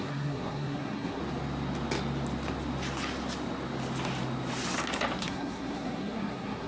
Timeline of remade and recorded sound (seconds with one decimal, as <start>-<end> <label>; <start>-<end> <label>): 0.0-1.2 remade; 1.2-5.2 recorded; 5.2-6.7 remade